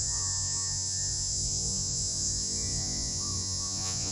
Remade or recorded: remade